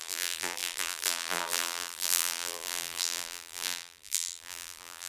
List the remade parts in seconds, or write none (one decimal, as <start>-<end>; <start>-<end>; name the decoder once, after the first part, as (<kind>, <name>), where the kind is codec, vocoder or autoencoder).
0.0-5.1 (vocoder, BigVGAN v2)